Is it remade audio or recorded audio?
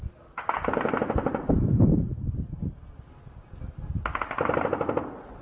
recorded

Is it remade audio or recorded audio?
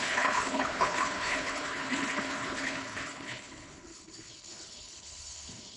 remade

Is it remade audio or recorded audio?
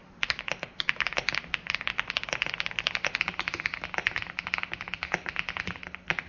recorded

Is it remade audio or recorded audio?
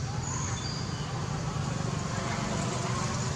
recorded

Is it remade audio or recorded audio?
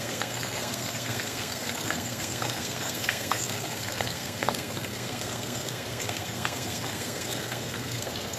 remade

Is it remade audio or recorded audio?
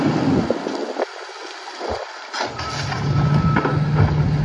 recorded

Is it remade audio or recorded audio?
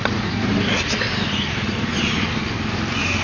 recorded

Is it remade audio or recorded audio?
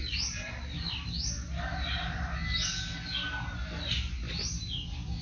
recorded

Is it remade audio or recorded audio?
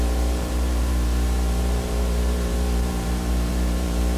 remade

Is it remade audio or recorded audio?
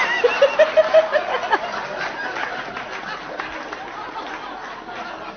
recorded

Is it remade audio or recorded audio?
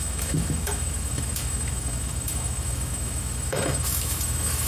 remade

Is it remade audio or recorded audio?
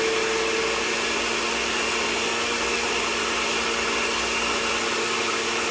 recorded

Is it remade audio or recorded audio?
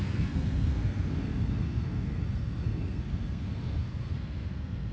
remade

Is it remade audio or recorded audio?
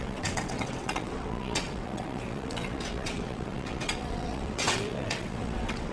remade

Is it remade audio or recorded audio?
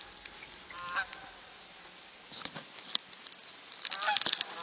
recorded